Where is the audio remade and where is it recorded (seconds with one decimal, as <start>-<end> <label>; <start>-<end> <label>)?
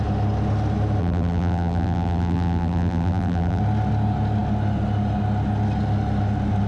0.0-1.0 recorded; 1.0-3.6 remade; 3.6-6.7 recorded